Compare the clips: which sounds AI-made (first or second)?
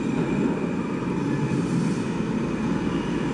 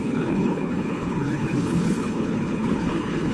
second